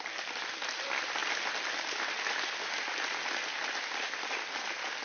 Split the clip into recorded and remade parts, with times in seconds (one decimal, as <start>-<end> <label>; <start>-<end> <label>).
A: 0.0-5.0 recorded